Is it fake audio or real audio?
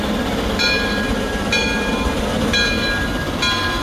real